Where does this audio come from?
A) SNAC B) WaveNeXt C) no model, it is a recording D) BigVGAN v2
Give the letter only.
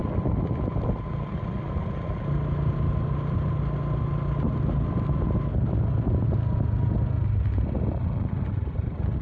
C